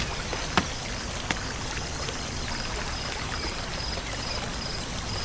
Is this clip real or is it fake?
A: real